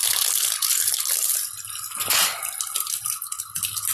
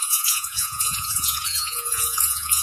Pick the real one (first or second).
first